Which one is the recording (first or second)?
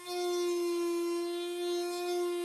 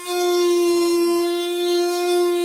first